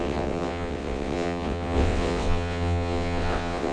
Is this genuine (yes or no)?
no